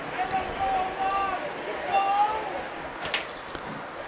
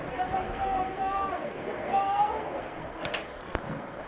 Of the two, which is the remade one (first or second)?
second